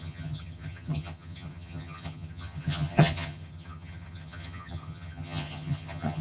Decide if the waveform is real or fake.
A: fake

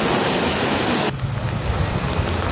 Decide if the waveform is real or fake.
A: real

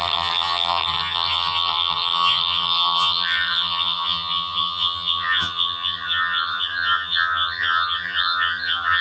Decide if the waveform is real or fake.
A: fake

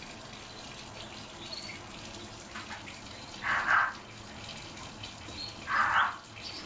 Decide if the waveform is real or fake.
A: real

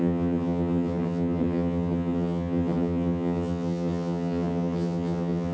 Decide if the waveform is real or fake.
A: fake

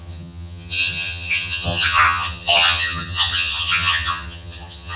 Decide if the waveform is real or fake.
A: fake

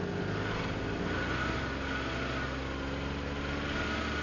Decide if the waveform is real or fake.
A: real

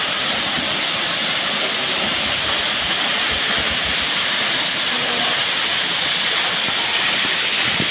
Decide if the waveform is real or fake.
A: real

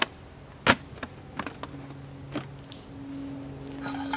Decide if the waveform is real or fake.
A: real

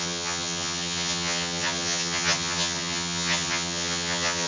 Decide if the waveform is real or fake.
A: fake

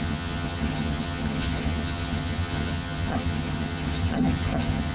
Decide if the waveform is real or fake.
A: fake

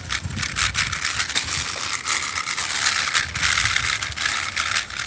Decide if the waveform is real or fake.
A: real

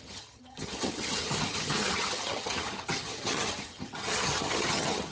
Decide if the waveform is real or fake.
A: fake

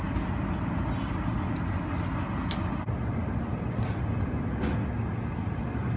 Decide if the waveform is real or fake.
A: real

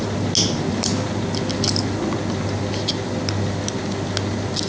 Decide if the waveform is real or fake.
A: real